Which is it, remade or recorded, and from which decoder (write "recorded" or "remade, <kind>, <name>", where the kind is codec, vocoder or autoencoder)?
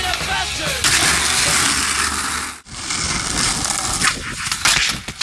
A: recorded